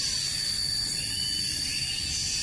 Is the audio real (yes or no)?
yes